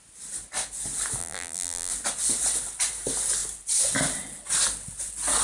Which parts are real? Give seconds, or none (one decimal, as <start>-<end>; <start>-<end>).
0.0-1.2; 1.9-5.4